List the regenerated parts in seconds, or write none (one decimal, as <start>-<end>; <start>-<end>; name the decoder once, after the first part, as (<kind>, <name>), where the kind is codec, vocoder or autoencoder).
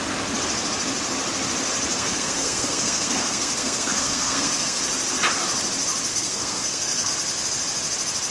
1.9-4.8 (codec, SNAC); 6.1-7.1